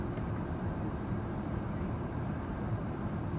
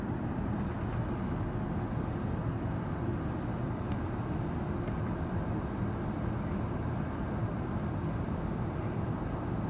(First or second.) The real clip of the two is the second